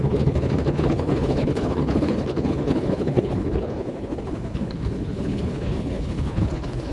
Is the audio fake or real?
fake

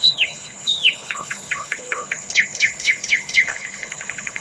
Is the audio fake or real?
fake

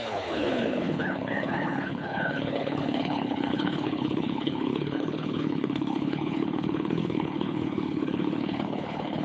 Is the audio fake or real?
fake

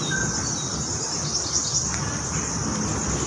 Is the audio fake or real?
real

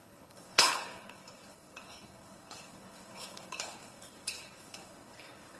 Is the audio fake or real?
fake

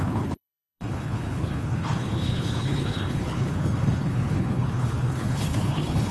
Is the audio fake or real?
fake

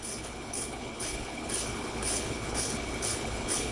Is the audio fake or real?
fake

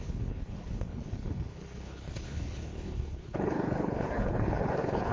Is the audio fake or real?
fake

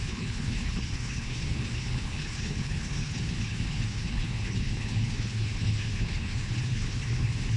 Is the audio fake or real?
fake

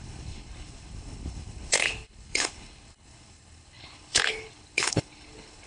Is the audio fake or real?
fake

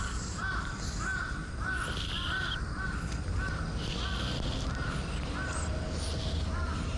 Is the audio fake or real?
real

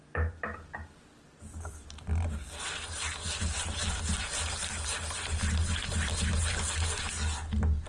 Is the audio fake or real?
real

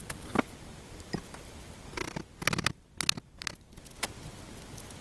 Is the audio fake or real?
real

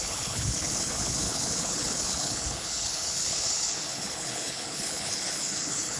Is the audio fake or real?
fake